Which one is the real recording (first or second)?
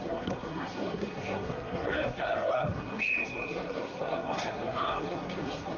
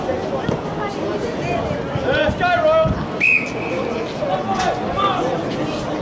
second